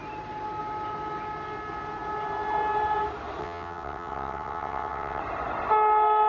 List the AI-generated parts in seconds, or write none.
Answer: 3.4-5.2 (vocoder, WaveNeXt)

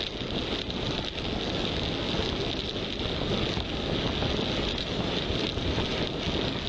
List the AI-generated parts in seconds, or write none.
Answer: 4.7-5.3 (autoencoder, DAC-VAE)